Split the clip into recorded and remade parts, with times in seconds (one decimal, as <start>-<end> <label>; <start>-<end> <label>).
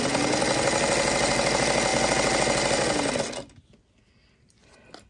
0.0-5.1 recorded